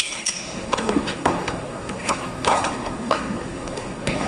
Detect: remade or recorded remade